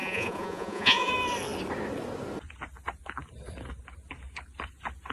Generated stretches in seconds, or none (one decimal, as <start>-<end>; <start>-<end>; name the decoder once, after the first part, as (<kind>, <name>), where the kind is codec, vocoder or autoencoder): 0.0-1.1 (vocoder, Vocos)